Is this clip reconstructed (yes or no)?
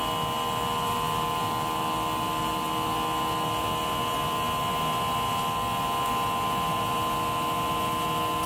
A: no